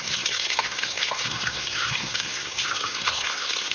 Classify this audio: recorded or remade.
remade